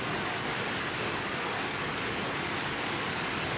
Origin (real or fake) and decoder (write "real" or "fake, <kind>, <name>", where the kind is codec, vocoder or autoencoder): fake, codec, DAC